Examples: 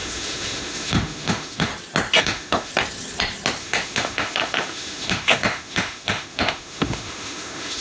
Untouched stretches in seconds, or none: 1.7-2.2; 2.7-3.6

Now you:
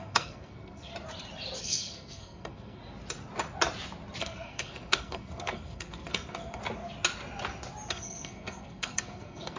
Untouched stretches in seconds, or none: 0.9-1.6; 2.8-4.2; 6.6-7.9